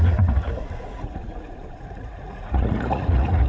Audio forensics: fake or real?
fake